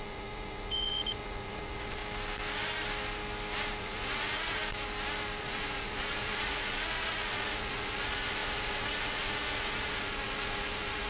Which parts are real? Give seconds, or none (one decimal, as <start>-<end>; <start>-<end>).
2.0-3.8; 4.6-5.4